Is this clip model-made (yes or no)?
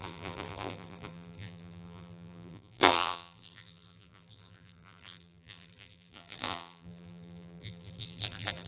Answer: yes